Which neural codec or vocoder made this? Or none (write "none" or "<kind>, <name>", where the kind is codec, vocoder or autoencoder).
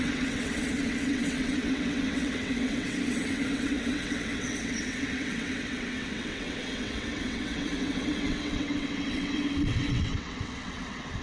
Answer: vocoder, WaveNeXt